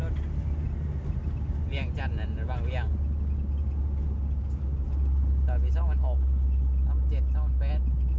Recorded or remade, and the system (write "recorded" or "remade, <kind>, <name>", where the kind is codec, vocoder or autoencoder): recorded